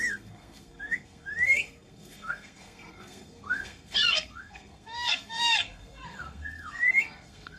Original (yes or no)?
no